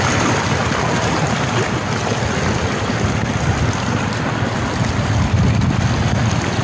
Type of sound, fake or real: real